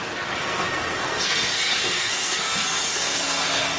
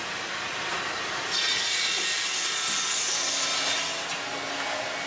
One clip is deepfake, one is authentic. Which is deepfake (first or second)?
first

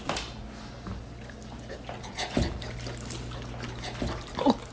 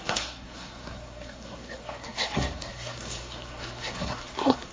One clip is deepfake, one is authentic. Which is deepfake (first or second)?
second